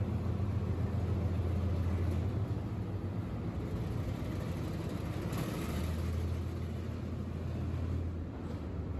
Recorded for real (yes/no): yes